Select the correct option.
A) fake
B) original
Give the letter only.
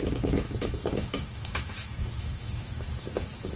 A